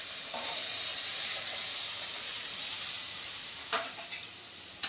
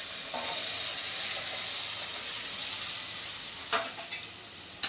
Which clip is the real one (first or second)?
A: second